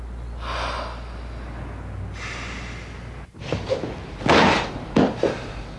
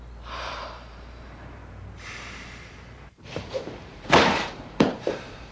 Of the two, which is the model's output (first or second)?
second